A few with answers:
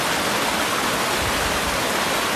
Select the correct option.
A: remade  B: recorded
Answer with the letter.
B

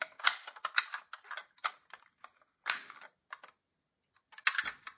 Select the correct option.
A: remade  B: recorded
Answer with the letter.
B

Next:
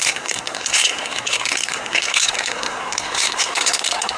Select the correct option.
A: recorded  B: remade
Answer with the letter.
B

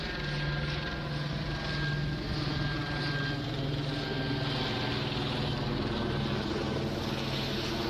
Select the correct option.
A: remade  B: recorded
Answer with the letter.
B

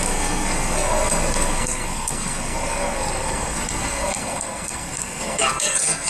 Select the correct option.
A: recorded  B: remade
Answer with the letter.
B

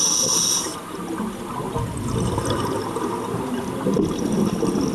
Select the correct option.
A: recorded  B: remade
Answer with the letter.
A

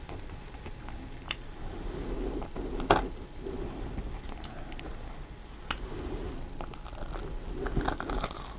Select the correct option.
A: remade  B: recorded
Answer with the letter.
B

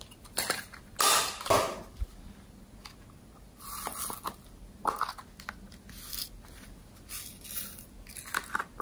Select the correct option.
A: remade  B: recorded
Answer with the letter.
B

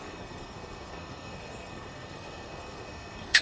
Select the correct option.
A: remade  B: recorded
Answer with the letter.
A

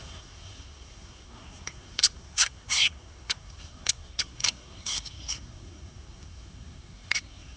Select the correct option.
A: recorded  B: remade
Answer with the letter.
B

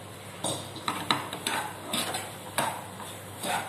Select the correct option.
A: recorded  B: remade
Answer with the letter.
A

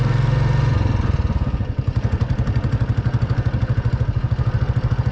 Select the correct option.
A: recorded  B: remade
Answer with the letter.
A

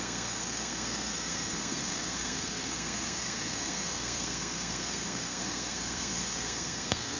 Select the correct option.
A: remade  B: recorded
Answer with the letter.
A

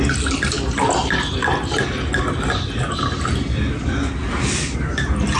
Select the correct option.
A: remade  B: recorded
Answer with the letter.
B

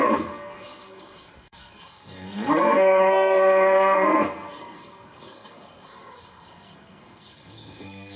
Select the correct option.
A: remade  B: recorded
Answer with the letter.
A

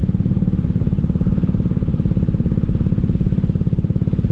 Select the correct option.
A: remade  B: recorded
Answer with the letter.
B